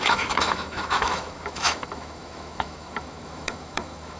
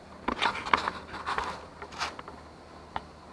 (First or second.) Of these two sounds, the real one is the second